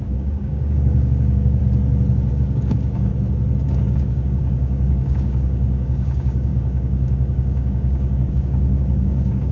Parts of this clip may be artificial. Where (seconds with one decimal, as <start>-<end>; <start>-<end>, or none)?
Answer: 0.0-1.6; 2.3-3.1; 3.7-9.5